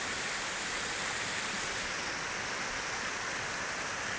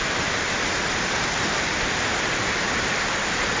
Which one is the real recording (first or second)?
first